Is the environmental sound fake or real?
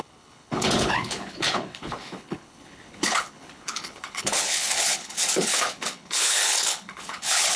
fake